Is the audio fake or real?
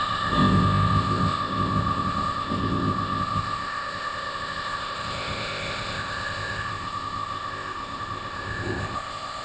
fake